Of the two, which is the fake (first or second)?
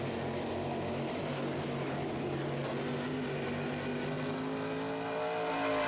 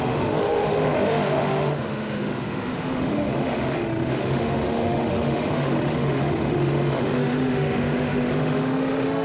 second